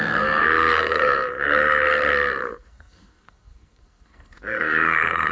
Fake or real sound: fake